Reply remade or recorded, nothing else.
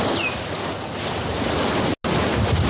recorded